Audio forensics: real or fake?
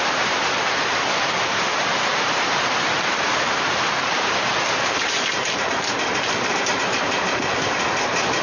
fake